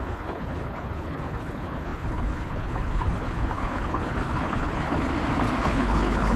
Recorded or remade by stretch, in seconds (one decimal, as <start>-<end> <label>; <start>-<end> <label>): 0.0-5.1 remade; 5.1-5.6 recorded; 5.6-6.4 remade